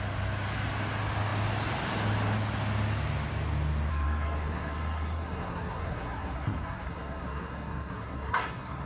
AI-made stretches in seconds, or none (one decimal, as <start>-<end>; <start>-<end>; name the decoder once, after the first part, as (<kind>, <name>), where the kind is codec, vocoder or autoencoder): 3.9-8.9 (codec, SNAC)